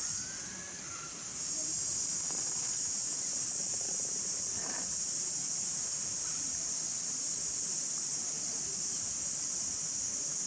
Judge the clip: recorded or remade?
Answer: recorded